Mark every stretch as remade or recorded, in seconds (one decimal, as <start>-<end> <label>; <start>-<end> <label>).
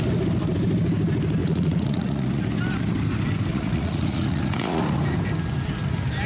0.0-1.4 recorded; 1.4-2.4 remade; 2.4-3.5 recorded; 3.5-5.0 remade; 5.0-6.3 recorded